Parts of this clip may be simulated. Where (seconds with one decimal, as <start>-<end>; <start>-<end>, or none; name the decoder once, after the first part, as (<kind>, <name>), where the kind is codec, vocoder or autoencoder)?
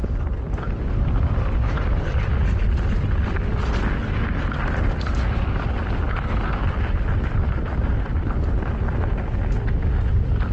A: none